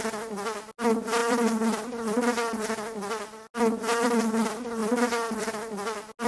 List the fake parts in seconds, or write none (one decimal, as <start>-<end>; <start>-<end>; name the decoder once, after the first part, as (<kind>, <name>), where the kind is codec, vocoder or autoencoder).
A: 4.8-5.5 (vocoder, BigVGAN v2)